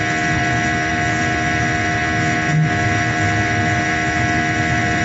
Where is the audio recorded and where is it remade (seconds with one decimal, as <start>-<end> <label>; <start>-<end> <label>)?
0.0-5.0 recorded